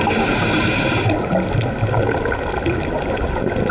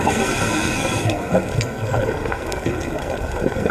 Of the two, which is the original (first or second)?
first